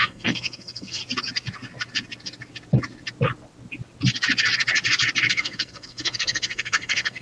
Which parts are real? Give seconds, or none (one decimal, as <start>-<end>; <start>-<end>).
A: 1.0-5.3